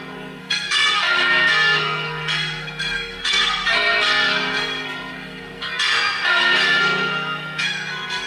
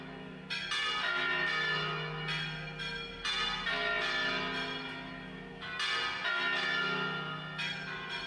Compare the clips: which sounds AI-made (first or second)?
first